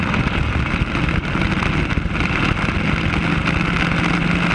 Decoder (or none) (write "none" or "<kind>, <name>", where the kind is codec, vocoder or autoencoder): none